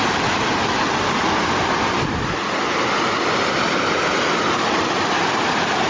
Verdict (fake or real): real